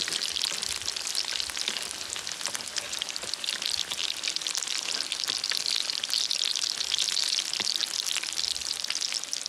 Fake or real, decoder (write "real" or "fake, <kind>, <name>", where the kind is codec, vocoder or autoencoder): real